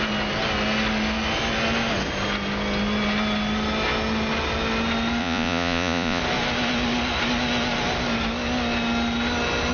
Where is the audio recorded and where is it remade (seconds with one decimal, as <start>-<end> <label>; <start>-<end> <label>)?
0.0-5.2 recorded; 5.2-6.2 remade; 6.2-9.7 recorded